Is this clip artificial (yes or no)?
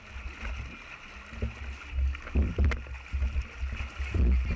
no